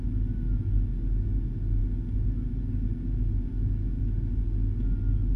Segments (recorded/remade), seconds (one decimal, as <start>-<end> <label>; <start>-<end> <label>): 0.0-5.4 recorded